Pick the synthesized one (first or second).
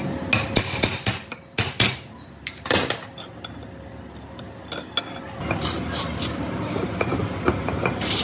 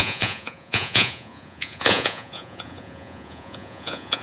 second